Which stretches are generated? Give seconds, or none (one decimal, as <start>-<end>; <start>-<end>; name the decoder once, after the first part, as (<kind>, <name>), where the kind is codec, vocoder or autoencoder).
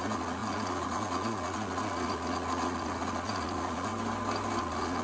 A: 0.0-3.9 (vocoder, Vocos); 4.6-5.0